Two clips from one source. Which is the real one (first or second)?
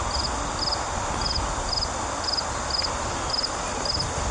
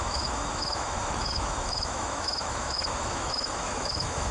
first